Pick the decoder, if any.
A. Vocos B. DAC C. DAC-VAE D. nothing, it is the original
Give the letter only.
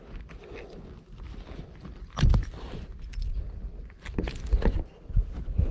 D